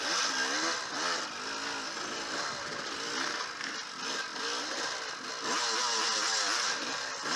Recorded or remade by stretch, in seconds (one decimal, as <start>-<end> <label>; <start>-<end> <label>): 0.0-7.4 recorded